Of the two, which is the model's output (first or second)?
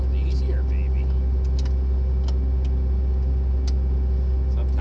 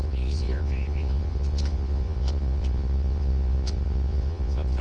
second